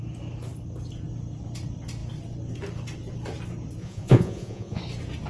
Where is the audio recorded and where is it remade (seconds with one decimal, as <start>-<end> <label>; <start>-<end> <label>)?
0.0-3.8 recorded; 3.8-4.8 remade; 4.8-5.3 recorded